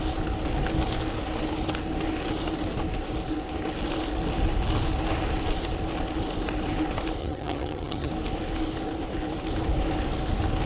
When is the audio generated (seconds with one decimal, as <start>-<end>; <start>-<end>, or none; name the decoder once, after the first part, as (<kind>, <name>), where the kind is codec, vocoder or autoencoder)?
7.2-8.1 (vocoder, HiFi-GAN)